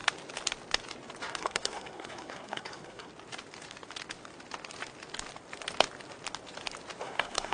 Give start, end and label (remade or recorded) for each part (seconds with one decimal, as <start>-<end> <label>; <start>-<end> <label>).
0.0-1.4 recorded; 1.4-3.1 remade; 3.1-7.0 recorded; 7.0-7.5 remade